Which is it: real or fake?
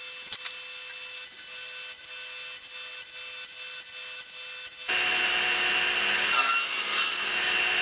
real